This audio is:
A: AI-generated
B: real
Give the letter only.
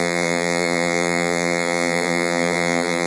A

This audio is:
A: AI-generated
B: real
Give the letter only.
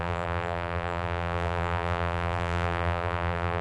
A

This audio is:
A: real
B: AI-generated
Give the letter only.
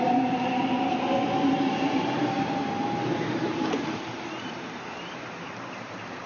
B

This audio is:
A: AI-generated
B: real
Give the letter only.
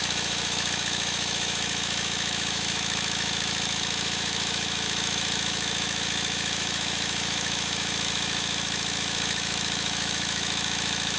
A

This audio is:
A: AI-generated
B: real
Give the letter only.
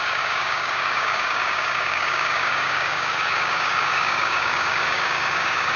A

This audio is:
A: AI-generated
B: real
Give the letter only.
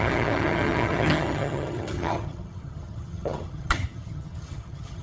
A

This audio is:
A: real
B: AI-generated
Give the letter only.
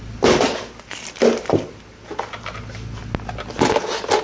A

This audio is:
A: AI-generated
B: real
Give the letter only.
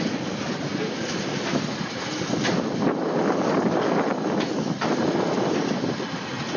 B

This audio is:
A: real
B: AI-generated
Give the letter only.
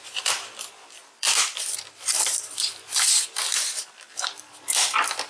B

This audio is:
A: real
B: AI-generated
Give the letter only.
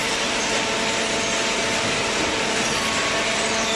A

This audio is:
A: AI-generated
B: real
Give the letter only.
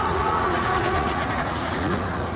A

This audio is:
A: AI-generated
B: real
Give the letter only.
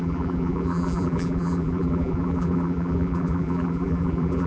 A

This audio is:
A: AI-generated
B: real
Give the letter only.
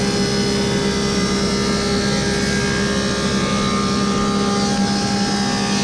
B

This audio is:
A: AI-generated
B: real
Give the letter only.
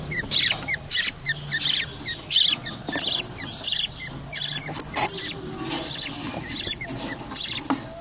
B